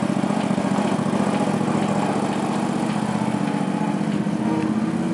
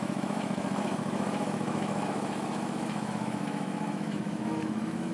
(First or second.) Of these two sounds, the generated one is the second